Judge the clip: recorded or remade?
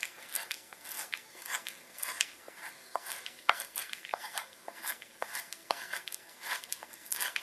remade